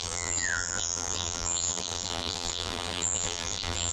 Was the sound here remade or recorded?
remade